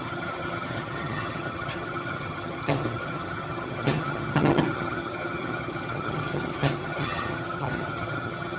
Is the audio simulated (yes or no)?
yes